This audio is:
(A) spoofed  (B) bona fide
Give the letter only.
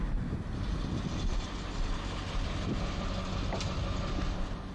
B